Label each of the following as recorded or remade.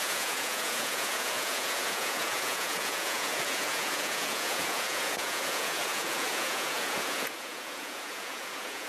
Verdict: remade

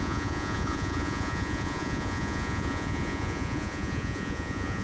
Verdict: remade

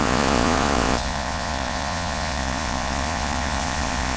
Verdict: remade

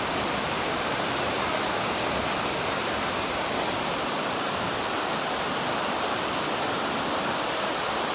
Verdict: recorded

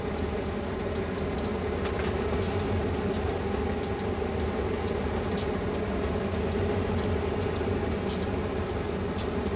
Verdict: recorded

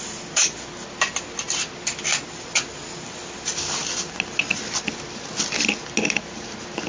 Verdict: recorded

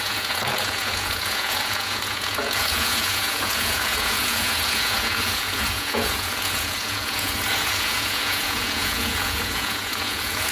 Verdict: remade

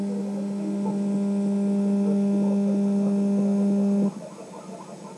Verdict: recorded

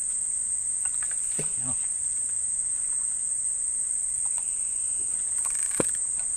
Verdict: remade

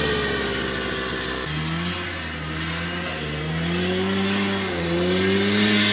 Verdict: recorded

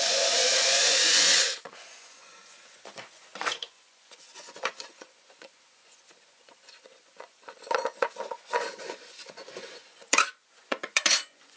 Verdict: remade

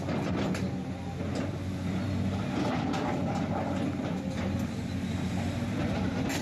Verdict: recorded